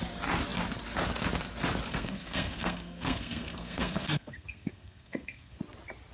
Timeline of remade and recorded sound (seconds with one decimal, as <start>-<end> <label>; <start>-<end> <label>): 0.0-1.9 recorded; 1.9-5.6 remade; 5.6-6.1 recorded